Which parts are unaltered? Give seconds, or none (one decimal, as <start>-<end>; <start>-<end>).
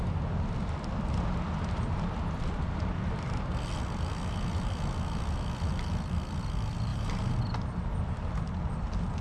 0.0-6.9; 7.4-9.2